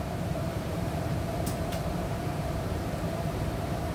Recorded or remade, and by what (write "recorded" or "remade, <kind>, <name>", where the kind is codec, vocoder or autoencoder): remade, vocoder, BigVGAN v2